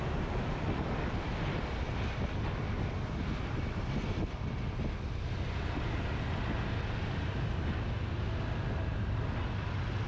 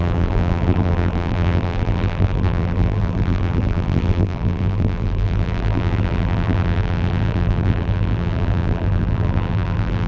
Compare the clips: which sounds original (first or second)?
first